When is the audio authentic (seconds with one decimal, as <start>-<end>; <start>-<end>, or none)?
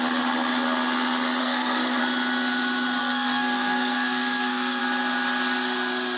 0.0-1.4; 2.0-3.0; 4.8-6.2